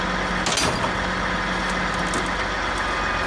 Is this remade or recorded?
recorded